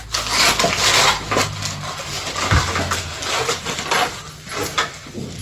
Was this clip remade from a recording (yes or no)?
no